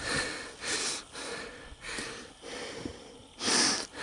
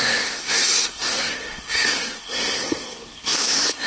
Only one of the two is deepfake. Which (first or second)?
second